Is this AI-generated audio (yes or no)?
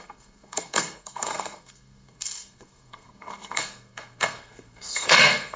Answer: yes